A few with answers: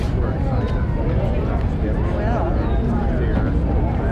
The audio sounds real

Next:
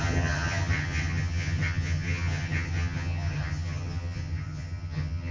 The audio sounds fake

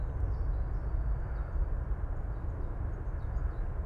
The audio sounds real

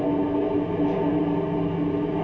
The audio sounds real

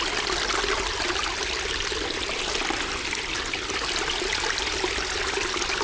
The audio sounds real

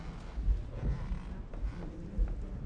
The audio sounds real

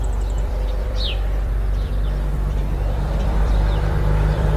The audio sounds fake